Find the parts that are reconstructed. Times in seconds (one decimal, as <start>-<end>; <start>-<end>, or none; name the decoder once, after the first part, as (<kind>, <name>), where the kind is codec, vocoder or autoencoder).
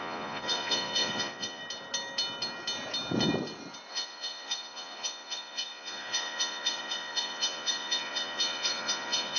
0.0-1.6 (vocoder, Vocos); 3.9-9.4